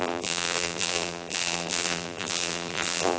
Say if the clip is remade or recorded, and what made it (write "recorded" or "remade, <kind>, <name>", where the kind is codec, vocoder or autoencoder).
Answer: remade, vocoder, BigVGAN v2